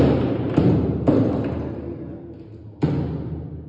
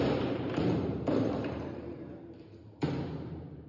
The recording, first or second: first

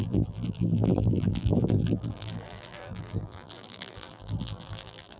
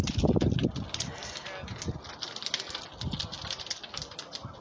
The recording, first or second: second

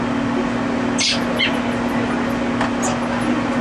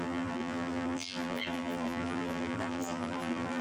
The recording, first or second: first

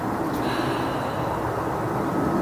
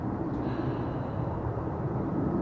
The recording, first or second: first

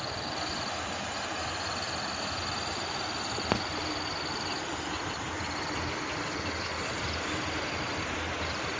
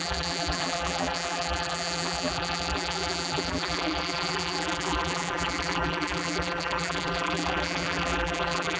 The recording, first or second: first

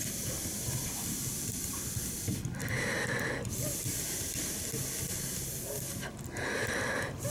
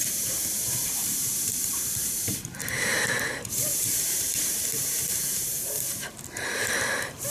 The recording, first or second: first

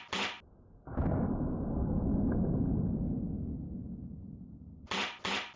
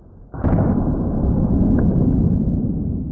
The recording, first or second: first